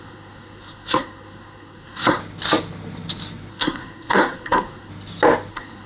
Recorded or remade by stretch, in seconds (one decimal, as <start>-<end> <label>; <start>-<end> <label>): 0.0-2.2 remade; 2.2-3.5 recorded; 3.5-4.9 remade; 4.9-5.5 recorded; 5.5-5.9 remade